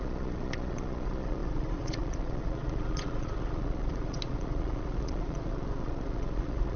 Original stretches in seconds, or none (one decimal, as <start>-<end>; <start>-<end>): none